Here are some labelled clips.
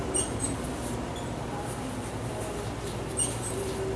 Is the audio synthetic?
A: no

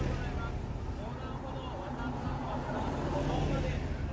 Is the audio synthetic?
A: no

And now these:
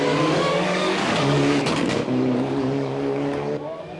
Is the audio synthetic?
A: yes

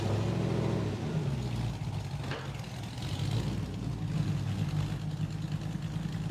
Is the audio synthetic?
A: no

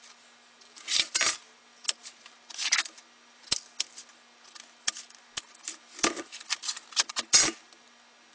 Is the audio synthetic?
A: no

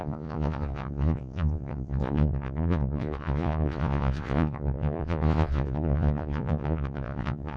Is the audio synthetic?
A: yes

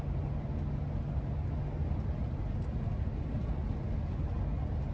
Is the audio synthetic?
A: no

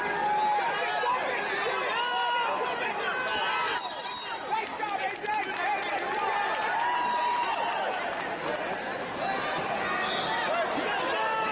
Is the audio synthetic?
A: no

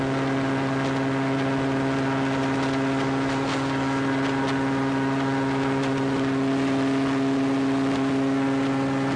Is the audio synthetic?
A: no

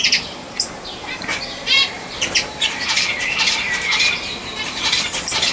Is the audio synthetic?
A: yes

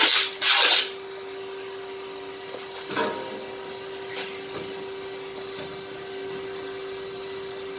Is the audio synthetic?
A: no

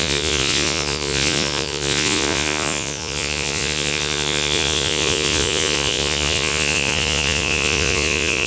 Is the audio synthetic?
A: yes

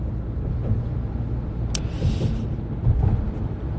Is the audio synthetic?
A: no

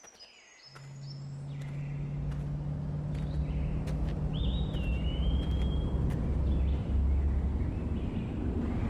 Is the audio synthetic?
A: no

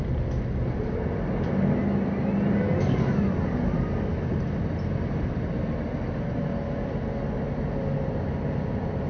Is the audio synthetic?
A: no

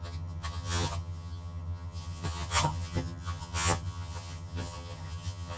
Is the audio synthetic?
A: yes